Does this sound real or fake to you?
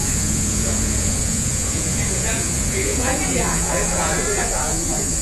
fake